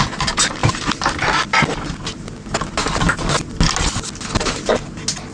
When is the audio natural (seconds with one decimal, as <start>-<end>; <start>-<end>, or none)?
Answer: 0.0-5.3